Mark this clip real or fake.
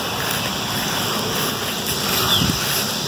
real